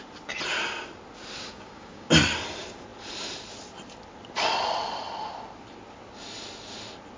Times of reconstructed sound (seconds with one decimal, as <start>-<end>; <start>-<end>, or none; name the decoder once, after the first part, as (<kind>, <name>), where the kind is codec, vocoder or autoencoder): 1.4-2.1 (codec, DAC)